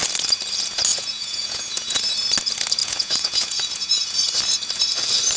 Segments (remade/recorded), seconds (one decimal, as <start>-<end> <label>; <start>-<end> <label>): 0.0-0.9 recorded; 0.9-2.0 remade; 2.0-2.8 recorded; 2.8-4.2 remade; 4.2-5.4 recorded